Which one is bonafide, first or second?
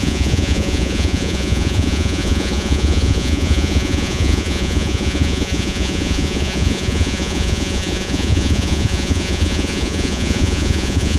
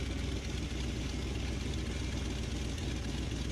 second